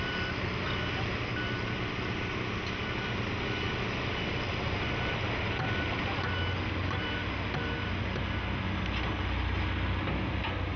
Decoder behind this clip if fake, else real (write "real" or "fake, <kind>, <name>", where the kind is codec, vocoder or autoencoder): real